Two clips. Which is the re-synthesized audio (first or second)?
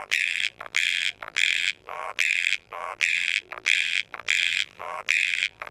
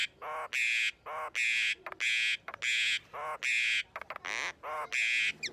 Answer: first